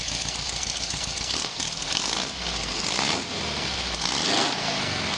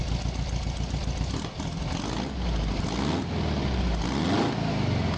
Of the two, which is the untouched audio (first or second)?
second